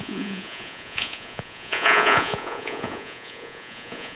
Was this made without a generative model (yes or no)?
no